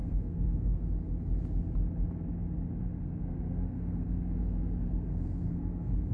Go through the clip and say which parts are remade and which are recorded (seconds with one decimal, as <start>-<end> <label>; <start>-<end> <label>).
0.0-0.9 remade; 0.9-2.8 recorded; 2.8-6.1 remade